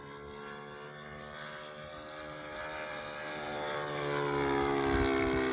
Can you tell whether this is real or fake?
real